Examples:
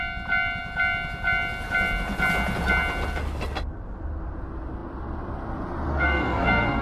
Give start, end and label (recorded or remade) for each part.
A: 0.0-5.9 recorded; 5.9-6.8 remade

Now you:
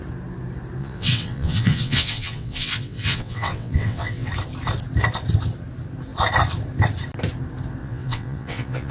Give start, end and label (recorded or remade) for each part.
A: 0.0-0.8 recorded; 0.8-4.3 remade; 4.3-7.8 recorded; 7.8-8.9 remade

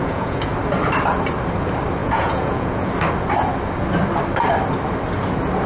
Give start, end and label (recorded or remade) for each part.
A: 0.0-0.5 remade; 0.5-2.0 recorded; 2.0-2.9 remade; 2.9-5.7 recorded

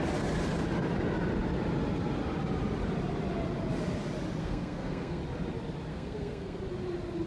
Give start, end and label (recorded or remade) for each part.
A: 0.0-4.4 recorded; 4.4-5.2 remade; 5.2-5.9 recorded; 5.9-6.6 remade; 6.6-7.3 recorded

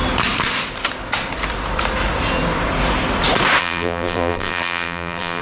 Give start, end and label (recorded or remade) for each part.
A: 0.0-3.6 recorded; 3.6-5.4 remade